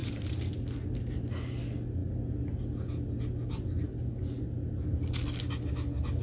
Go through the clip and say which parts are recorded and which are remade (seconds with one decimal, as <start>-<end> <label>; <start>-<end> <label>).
0.0-0.5 remade; 0.5-6.2 recorded